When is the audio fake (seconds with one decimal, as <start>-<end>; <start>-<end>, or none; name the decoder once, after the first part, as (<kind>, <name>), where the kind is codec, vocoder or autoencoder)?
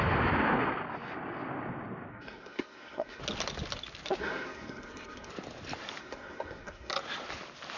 2.1-3.2 (codec, SNAC); 4.2-5.3; 6.0-6.9